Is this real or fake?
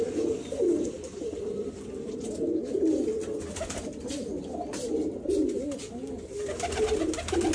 real